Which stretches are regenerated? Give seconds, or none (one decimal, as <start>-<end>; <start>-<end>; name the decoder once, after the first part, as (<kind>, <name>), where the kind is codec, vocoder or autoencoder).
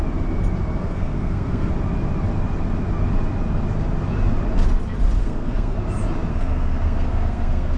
0.8-1.7 (codec, SNAC); 5.2-5.8; 6.3-7.8